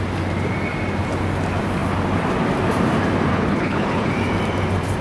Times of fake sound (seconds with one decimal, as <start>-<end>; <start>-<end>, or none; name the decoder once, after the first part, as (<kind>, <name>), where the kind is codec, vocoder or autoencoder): 3.3-4.1 (codec, HILCodec)